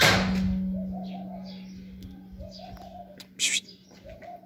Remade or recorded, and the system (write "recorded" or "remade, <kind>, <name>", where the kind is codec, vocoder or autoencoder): recorded